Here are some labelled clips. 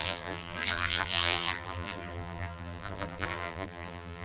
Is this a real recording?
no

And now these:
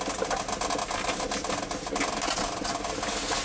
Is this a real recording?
yes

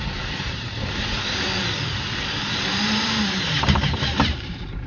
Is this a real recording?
no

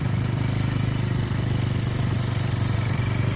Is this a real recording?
no